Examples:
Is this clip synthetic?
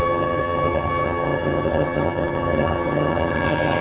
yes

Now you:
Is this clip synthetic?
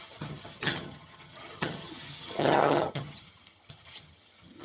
yes